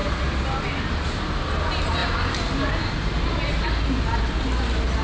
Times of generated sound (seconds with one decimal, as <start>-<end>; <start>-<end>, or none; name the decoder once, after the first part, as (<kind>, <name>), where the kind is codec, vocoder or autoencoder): none